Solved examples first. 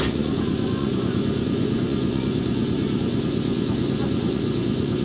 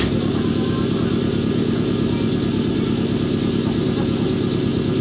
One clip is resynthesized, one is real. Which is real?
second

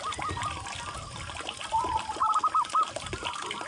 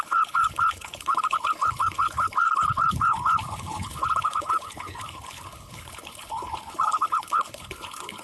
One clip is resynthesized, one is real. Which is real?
first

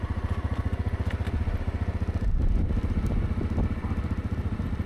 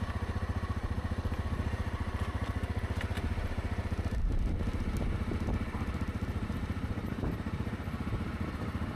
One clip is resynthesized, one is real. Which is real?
first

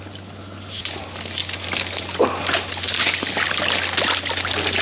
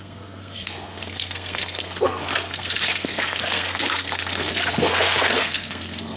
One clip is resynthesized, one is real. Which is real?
first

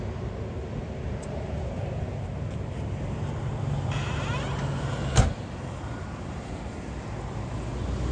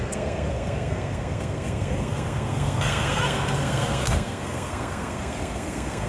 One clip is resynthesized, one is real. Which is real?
first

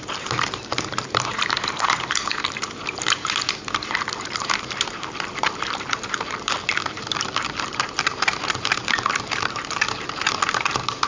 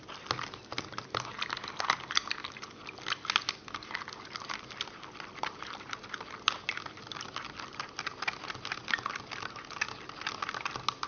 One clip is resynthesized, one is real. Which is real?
second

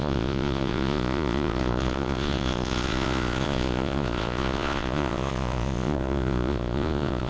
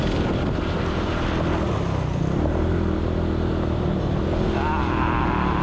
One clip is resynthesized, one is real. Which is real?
second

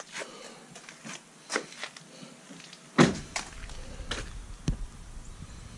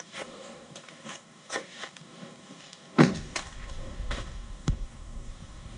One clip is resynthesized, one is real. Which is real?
first